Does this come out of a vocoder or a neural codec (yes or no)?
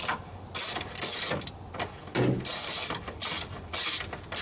no